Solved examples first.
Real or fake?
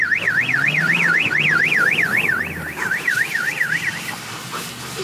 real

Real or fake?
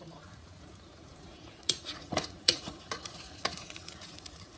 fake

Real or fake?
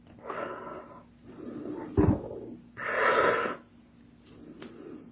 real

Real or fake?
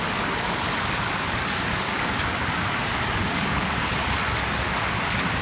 fake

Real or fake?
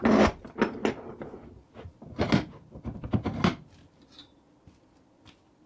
real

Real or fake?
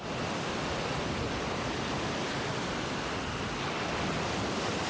real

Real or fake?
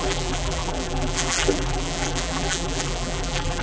fake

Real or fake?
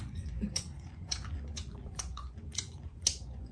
fake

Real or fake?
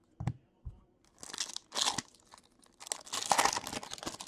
real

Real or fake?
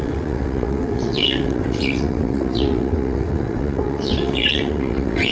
fake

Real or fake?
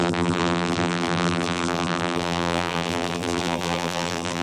fake